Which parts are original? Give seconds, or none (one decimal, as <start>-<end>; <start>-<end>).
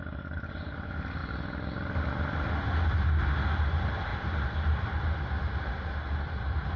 0.0-6.8